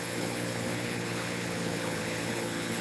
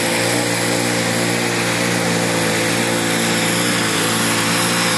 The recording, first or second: second